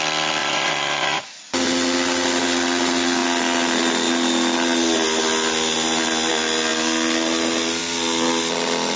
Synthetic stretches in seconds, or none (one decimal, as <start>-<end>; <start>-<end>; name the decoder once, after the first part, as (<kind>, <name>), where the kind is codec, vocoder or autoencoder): 0.4-1.3 (vocoder, Vocos)